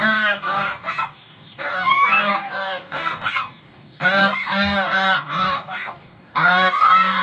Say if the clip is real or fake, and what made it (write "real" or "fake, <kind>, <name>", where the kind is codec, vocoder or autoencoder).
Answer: fake, codec, DAC